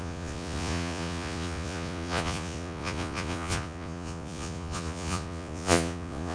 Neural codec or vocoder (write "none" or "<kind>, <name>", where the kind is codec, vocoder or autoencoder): vocoder, Vocos